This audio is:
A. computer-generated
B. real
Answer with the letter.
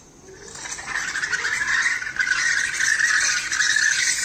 B